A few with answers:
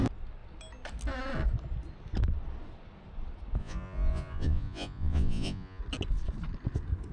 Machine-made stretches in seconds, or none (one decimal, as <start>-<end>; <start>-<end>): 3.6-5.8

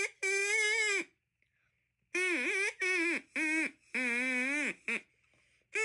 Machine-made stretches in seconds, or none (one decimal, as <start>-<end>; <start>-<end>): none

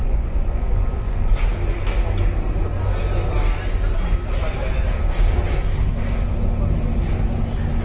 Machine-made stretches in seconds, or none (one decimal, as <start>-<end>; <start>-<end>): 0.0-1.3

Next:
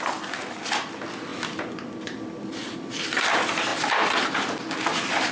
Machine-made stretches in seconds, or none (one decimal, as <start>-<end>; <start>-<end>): none